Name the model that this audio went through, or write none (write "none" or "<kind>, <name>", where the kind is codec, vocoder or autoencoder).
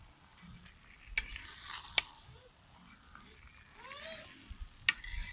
none